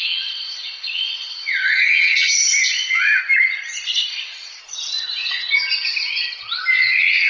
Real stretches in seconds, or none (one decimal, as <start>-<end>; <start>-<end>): 3.2-4.1; 4.6-6.7